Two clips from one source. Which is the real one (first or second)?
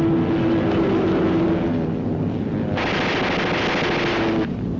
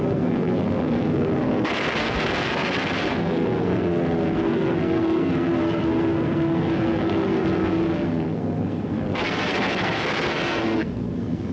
first